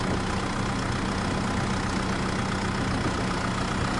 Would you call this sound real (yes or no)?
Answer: yes